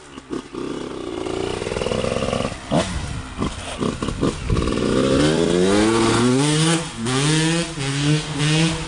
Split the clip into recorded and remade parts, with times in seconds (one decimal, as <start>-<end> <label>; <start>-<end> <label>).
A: 0.0-6.3 recorded; 6.3-6.8 remade; 6.8-7.9 recorded; 7.9-8.4 remade; 8.4-8.9 recorded